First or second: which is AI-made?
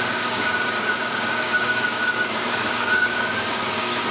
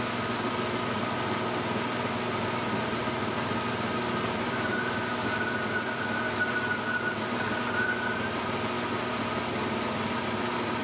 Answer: first